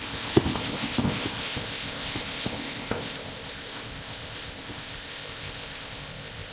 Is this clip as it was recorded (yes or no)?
no